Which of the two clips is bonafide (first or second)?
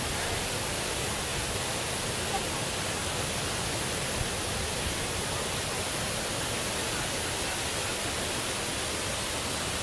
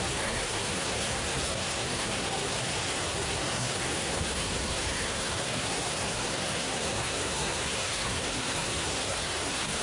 first